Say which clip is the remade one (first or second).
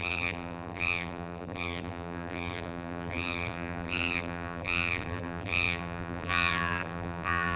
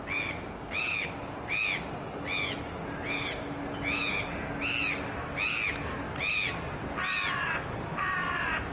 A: first